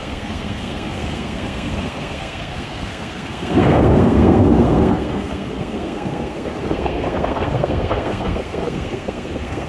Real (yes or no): no